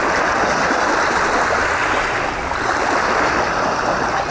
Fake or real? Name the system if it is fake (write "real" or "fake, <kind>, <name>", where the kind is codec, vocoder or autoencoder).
real